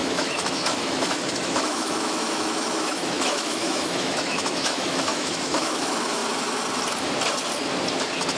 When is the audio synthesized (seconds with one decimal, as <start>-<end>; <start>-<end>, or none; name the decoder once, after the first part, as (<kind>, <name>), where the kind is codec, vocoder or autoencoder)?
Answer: 0.0-6.2 (autoencoder, DAC-VAE)